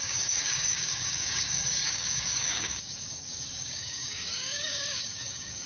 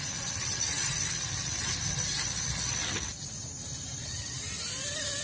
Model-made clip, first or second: first